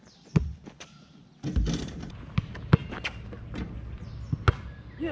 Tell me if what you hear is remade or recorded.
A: recorded